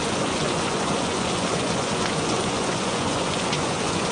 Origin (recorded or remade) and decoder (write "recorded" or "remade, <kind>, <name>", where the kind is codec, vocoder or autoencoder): remade, vocoder, Vocos